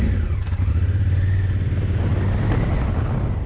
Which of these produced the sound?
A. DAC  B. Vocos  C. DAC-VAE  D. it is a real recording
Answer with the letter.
D